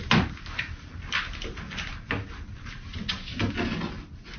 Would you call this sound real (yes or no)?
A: yes